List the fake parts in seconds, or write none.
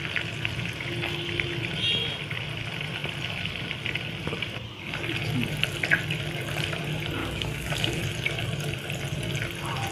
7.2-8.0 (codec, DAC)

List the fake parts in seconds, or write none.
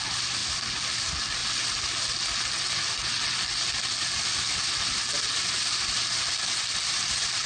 none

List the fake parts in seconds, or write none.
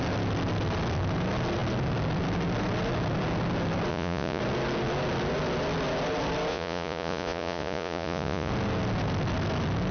3.9-4.4 (vocoder, Vocos); 6.5-8.5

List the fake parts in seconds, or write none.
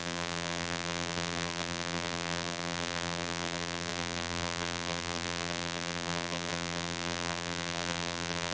0.0-8.5 (vocoder, BigVGAN v2)